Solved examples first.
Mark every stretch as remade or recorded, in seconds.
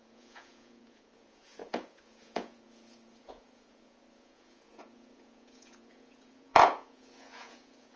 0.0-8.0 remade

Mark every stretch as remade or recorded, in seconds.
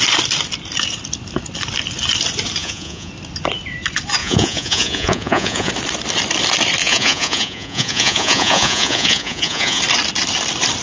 0.0-2.6 recorded; 2.6-3.1 remade; 3.1-4.2 recorded; 4.2-5.7 remade; 5.7-6.8 recorded; 6.8-9.8 remade; 9.8-10.8 recorded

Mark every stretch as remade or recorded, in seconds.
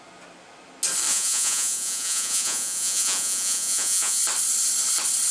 0.0-1.1 recorded; 1.1-4.2 remade; 4.2-5.3 recorded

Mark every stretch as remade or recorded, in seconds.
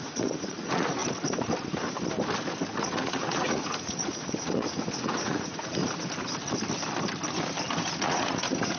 0.0-1.0 remade; 1.0-2.8 recorded; 2.8-5.8 remade; 5.8-8.0 recorded; 8.0-8.8 remade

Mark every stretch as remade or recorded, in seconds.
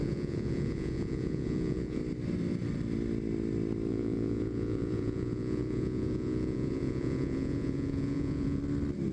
0.0-2.0 remade; 2.0-3.9 recorded; 3.9-8.6 remade; 8.6-9.1 recorded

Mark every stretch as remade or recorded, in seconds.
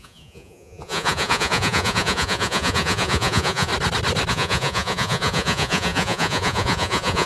0.0-3.7 remade; 3.7-4.3 recorded; 4.3-7.3 remade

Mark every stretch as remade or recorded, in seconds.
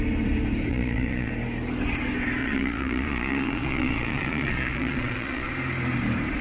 0.0-0.7 recorded; 0.7-1.3 remade; 1.3-2.4 recorded; 2.4-5.5 remade; 5.5-6.4 recorded